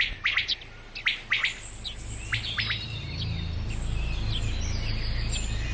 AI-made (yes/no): no